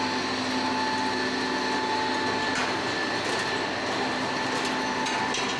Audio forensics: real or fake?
real